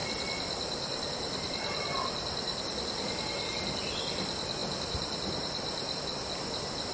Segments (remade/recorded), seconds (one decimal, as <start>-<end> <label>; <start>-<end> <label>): 0.0-3.5 remade; 3.5-4.6 recorded; 4.6-6.3 remade; 6.3-6.9 recorded

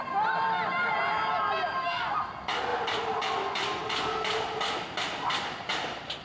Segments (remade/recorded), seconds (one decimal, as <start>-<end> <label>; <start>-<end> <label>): 0.0-6.2 recorded

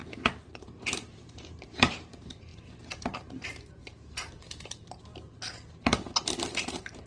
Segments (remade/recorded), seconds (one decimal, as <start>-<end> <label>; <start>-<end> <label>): 0.0-0.6 recorded; 0.6-5.1 remade; 5.1-6.5 recorded; 6.5-7.1 remade

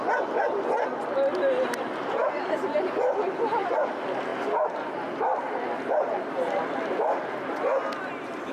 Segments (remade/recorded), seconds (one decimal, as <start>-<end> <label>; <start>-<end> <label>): 0.0-2.2 recorded; 2.2-3.7 remade; 3.7-8.5 recorded